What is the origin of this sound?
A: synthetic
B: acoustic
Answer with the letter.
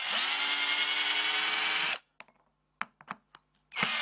B